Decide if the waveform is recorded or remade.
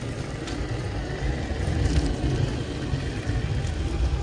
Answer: recorded